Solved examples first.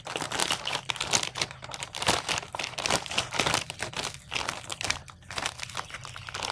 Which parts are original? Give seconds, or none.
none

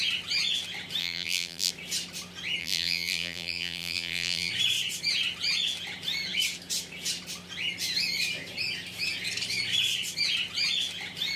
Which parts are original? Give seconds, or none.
0.0-1.0; 1.7-2.6; 4.5-11.4

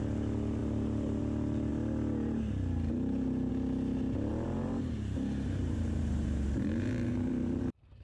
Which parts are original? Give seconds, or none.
0.0-4.3; 7.6-8.0